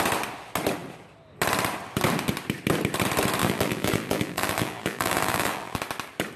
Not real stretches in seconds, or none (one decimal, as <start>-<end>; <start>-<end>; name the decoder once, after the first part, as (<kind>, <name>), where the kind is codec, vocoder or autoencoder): 3.4-5.8 (vocoder, BigVGAN v2)